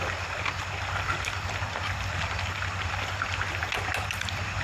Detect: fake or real real